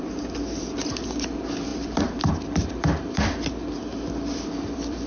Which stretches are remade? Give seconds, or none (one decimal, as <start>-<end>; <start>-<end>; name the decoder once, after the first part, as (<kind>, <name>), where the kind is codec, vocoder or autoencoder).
0.0-5.1 (vocoder, BigVGAN v2)